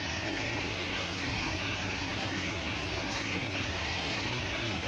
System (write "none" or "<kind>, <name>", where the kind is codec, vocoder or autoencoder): codec, SNAC